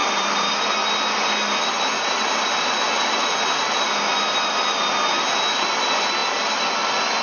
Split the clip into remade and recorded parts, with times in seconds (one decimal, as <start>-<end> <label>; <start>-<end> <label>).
0.0-0.5 remade; 0.5-7.2 recorded

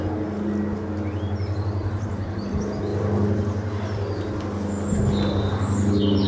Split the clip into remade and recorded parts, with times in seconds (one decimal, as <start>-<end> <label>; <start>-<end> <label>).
0.0-1.8 recorded; 1.8-2.5 remade; 2.5-6.3 recorded

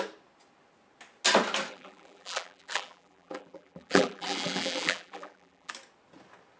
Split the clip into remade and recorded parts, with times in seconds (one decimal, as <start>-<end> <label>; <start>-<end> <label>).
0.0-1.7 recorded; 1.7-5.7 remade; 5.7-6.6 recorded

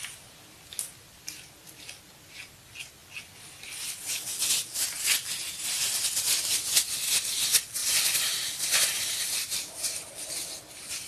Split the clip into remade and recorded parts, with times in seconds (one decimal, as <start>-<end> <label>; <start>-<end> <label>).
0.0-7.8 recorded; 7.8-10.1 remade; 10.1-11.1 recorded

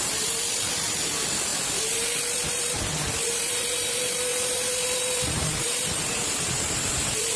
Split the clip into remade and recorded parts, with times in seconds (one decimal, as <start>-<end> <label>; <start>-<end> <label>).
0.0-7.4 recorded

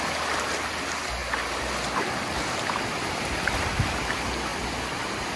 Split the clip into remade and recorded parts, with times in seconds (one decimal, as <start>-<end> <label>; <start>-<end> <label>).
0.0-5.4 recorded